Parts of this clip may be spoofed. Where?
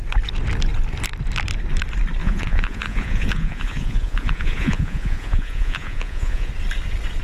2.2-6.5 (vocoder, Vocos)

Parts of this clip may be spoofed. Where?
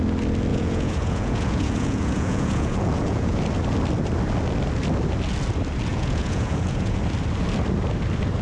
0.5-3.4 (vocoder, Vocos); 5.9-7.0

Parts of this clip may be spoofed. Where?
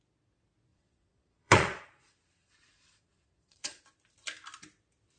0.7-3.8 (vocoder, Vocos)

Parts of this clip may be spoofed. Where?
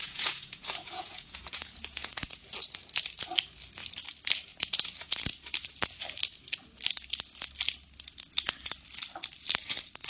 0.0-2.1 (vocoder, Vocos); 4.5-5.1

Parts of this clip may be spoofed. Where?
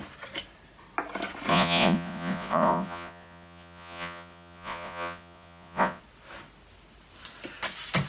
1.5-6.0 (vocoder, Vocos)